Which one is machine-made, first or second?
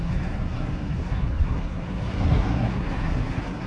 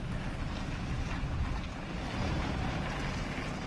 first